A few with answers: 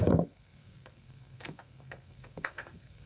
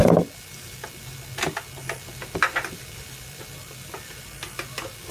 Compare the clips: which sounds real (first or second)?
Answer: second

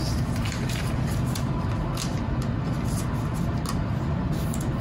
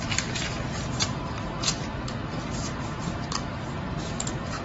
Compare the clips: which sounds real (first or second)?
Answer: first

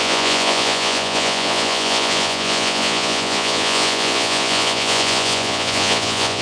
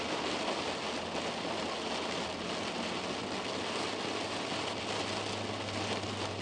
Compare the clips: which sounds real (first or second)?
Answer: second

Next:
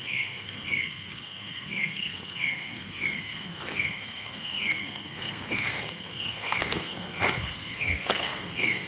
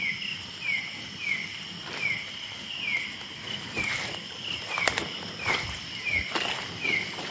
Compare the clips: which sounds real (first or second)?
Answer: second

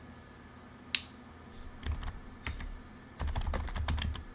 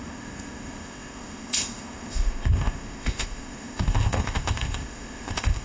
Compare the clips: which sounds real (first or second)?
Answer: first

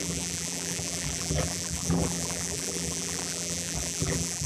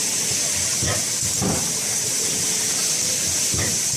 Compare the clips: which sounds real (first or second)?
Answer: second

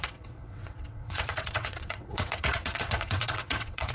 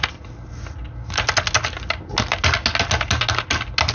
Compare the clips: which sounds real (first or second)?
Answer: second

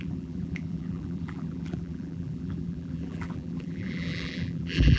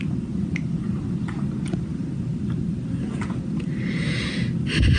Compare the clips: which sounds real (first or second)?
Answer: second